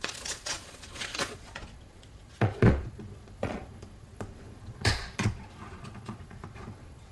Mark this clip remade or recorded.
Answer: remade